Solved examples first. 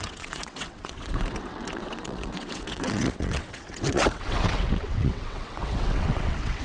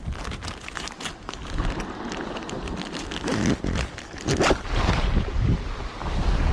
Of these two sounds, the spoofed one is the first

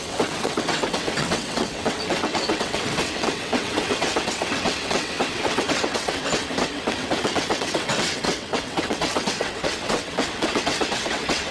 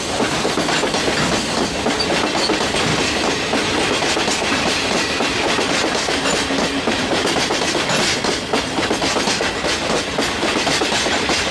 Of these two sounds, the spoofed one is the first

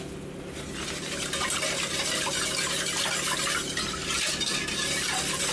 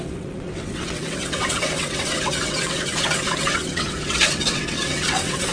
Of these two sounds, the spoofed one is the second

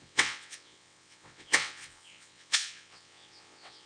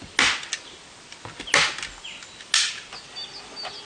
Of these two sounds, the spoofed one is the first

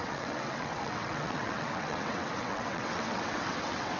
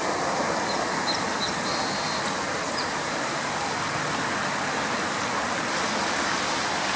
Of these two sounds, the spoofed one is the first